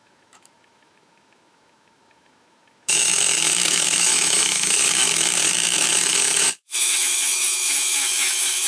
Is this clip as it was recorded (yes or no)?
no